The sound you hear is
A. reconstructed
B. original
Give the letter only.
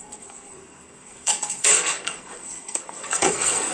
A